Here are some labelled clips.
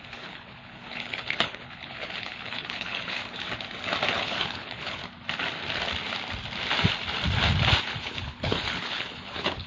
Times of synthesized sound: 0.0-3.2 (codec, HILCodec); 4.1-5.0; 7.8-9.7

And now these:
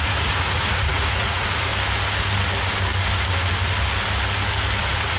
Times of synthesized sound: 0.0-1.7 (vocoder, Vocos); 4.8-5.2

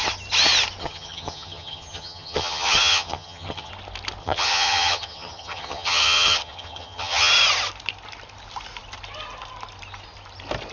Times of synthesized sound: 0.8-3.7 (vocoder, HiFi-GAN); 4.2-7.3

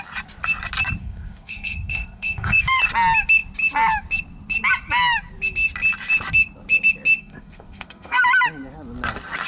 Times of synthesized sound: 1.0-2.8 (codec, SNAC); 7.2-8.2

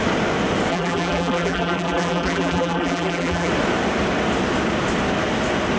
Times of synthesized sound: 0.7-3.5 (vocoder, BigVGAN v2)

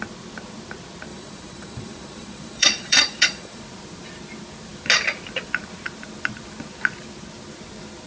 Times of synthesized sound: 1.1-3.6 (vocoder, Vocos)